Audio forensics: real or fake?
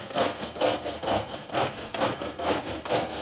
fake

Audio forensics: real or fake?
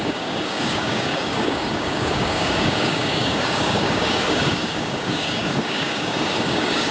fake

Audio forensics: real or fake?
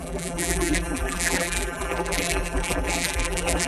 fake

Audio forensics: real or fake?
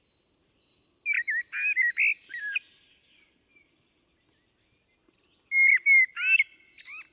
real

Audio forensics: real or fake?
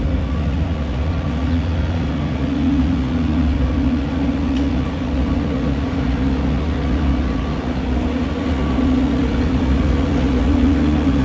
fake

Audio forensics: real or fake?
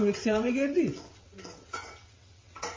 fake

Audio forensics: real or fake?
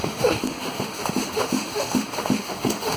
fake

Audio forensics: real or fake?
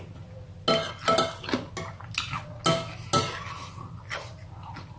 real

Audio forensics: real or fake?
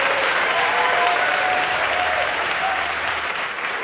fake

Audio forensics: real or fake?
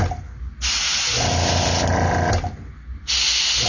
real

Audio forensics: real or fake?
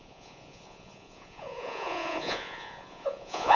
fake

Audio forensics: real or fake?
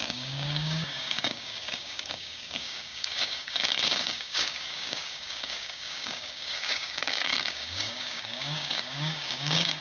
fake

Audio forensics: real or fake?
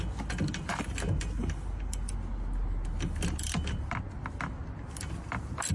real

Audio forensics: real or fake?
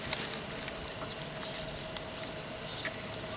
real